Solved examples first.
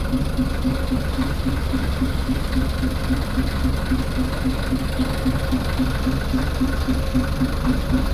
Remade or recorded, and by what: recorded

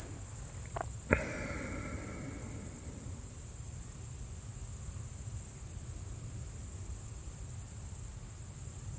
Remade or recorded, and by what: recorded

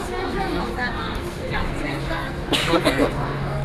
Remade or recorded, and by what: remade, codec, SNAC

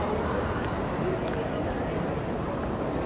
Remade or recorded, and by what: recorded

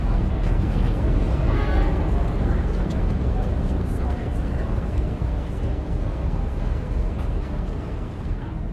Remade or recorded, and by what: remade, codec, SNAC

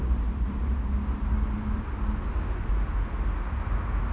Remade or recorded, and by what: recorded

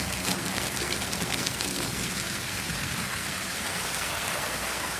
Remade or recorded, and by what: remade, codec, SNAC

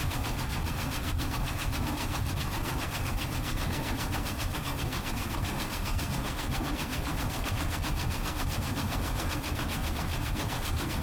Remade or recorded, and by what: remade, codec, SNAC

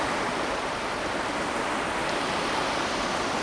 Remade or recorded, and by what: recorded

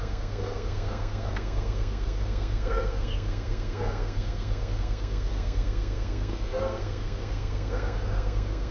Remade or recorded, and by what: remade, codec, SNAC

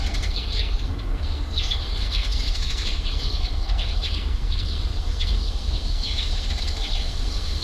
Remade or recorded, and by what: remade, codec, SNAC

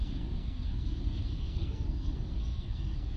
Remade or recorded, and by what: remade, codec, SNAC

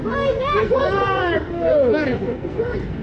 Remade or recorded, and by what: remade, codec, SNAC